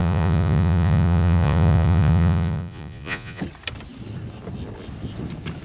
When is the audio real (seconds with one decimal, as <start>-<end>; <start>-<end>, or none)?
3.4-5.6